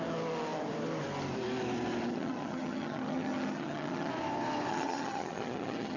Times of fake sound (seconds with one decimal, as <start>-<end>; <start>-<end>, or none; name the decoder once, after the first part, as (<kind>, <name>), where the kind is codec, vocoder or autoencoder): 2.1-4.1 (vocoder, HiFi-GAN); 4.7-6.0